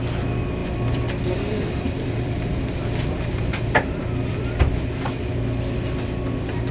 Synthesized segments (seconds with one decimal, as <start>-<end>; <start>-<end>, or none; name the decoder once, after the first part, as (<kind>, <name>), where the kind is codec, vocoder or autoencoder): 0.6-4.6 (vocoder, BigVGAN v2)

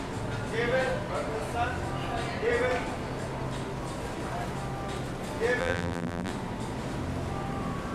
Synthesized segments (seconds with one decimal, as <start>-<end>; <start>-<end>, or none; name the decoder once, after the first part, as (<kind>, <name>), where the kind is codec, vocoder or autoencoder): 5.6-6.3 (vocoder, BigVGAN v2)

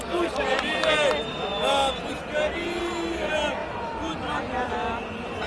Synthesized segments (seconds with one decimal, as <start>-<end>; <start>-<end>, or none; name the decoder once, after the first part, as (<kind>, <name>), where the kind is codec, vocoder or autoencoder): 3.6-4.7 (vocoder, BigVGAN v2)

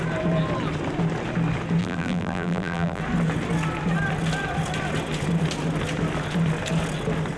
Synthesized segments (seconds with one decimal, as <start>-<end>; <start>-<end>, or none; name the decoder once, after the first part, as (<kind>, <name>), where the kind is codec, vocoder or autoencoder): 1.8-3.0 (vocoder, BigVGAN v2)